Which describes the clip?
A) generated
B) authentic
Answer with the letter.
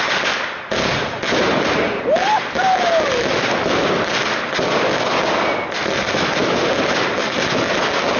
B